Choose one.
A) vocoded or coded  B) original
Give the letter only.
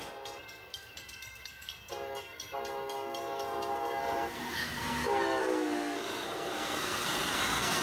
A